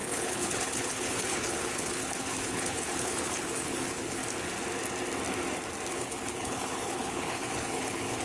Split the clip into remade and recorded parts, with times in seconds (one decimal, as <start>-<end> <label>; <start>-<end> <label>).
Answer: 0.0-4.2 remade; 4.2-5.9 recorded; 5.9-8.2 remade

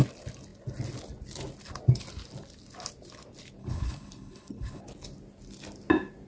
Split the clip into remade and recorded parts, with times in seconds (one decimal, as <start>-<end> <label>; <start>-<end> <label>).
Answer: 0.0-3.6 recorded; 3.6-4.8 remade; 4.8-6.3 recorded

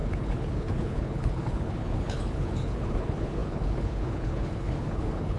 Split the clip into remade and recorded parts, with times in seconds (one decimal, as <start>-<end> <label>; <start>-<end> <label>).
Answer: 0.0-5.4 remade

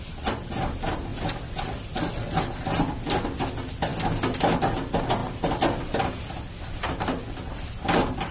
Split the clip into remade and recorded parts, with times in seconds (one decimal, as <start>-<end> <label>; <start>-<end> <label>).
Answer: 0.0-8.3 recorded

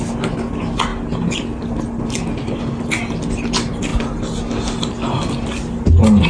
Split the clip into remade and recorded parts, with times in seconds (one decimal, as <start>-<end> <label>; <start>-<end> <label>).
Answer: 0.0-6.3 recorded